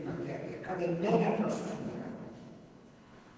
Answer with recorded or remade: remade